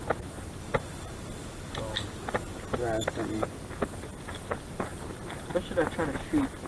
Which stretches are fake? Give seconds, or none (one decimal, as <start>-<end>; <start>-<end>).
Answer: none